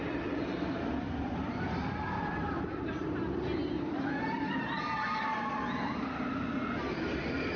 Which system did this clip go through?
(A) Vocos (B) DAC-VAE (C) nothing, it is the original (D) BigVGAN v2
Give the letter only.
C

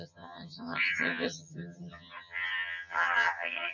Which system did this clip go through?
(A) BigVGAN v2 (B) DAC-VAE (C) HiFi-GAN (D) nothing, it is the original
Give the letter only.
C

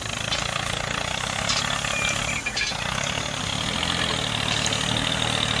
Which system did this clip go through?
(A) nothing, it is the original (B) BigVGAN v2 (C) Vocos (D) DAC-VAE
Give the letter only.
A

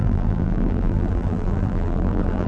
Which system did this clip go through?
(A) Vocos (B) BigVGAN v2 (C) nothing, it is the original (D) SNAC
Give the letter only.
B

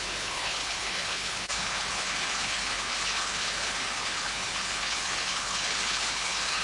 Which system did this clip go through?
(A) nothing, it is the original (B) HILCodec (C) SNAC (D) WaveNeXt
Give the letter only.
B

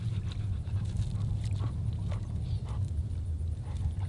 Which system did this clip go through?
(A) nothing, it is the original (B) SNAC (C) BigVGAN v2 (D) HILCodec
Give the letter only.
C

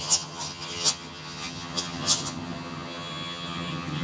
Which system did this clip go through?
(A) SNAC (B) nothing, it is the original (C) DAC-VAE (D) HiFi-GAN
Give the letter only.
D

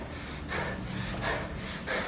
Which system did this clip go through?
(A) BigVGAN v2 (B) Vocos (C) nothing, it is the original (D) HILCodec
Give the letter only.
C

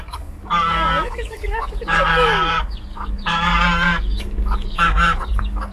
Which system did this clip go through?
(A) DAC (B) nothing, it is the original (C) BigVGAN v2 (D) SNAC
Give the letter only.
A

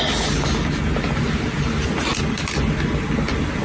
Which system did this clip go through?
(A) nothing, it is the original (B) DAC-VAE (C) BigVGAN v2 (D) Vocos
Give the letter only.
A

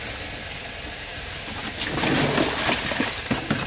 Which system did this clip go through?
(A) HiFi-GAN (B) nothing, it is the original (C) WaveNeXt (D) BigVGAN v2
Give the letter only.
B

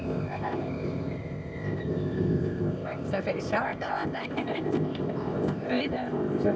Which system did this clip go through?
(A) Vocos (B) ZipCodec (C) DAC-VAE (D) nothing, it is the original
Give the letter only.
B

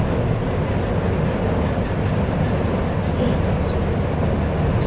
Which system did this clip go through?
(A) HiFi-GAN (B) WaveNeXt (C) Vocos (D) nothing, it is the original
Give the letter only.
D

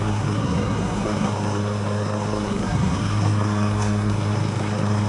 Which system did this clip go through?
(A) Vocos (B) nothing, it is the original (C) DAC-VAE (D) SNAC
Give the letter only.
D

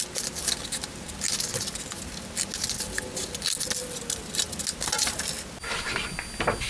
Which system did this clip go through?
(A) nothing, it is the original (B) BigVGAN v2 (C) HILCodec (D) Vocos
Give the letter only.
A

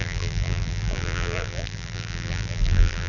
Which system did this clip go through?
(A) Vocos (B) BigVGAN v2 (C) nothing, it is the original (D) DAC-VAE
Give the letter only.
B